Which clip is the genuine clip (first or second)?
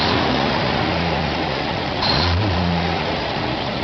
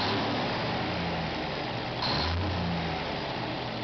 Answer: second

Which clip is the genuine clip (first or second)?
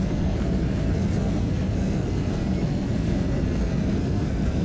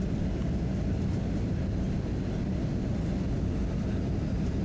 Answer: second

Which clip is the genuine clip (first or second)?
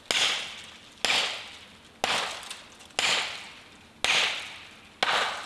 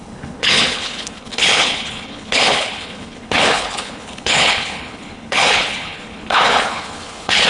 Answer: first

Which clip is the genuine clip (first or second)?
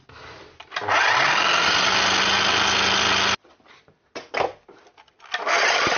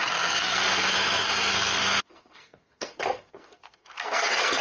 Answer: first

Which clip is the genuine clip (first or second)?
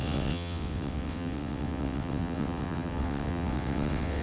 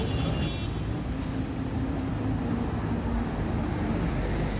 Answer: second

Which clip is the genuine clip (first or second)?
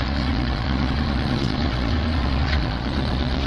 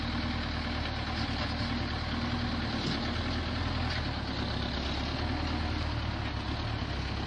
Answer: second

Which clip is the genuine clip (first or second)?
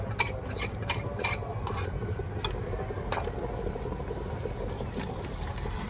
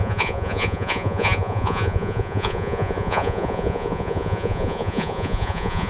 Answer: first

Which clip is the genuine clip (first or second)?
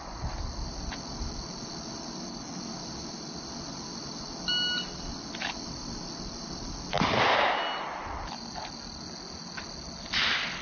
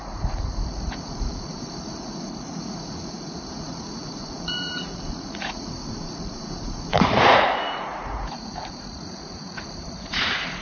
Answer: first